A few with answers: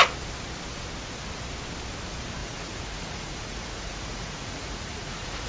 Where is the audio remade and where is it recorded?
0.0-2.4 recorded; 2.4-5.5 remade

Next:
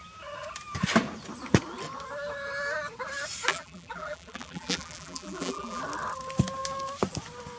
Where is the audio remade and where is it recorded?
0.0-3.5 recorded; 3.5-5.8 remade; 5.8-7.6 recorded

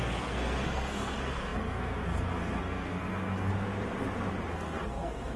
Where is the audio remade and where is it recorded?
0.0-3.5 remade; 3.5-4.5 recorded; 4.5-5.4 remade

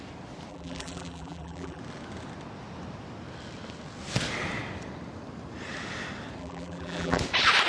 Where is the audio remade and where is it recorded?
0.0-0.5 recorded; 0.5-1.8 remade; 1.8-6.4 recorded; 6.4-7.2 remade; 7.2-7.7 recorded